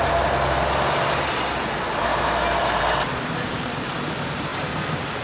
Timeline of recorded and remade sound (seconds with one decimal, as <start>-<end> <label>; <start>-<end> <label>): 0.0-2.1 recorded; 2.1-4.1 remade; 4.1-5.2 recorded